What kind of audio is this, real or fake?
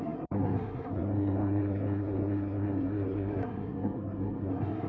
fake